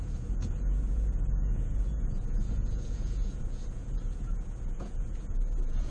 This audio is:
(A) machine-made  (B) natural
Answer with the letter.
A